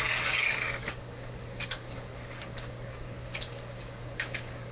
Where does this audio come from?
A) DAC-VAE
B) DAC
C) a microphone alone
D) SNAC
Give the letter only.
B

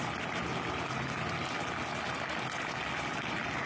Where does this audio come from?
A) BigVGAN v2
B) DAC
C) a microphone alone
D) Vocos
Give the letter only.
C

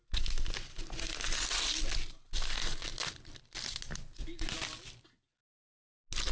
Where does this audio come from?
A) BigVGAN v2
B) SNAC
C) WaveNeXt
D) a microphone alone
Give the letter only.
D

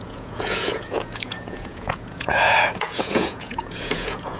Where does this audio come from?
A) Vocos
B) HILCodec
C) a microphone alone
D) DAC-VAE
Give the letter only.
A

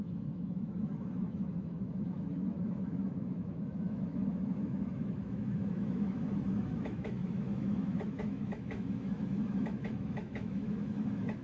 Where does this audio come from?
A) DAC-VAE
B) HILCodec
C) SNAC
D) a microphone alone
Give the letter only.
A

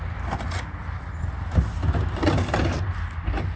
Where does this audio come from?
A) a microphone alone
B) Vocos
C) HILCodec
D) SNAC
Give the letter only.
A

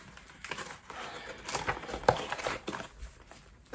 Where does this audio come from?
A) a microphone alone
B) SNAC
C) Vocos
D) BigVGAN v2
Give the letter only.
A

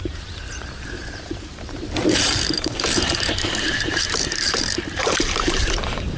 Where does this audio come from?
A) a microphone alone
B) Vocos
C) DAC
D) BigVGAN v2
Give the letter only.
D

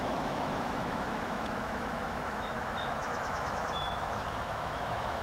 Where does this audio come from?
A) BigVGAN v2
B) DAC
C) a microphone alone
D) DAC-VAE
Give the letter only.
D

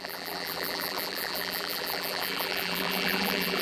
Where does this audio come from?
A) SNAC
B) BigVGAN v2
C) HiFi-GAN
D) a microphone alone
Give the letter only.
B